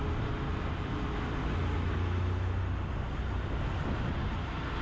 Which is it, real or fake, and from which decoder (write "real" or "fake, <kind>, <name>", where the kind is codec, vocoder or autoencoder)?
real